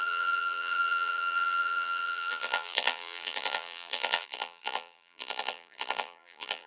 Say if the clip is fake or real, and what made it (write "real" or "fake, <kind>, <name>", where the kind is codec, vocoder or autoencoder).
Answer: fake, vocoder, BigVGAN v2